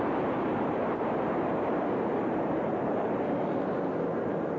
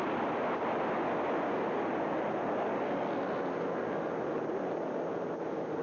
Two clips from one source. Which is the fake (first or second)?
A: first